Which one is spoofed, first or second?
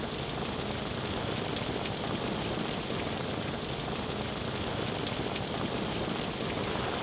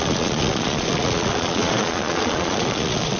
second